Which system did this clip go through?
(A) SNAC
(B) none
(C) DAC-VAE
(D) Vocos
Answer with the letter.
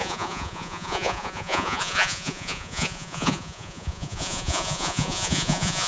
D